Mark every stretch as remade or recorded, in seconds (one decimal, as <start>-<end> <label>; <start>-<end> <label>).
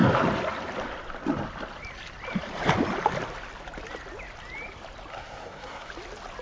0.0-5.1 recorded; 5.1-5.9 remade; 5.9-6.4 recorded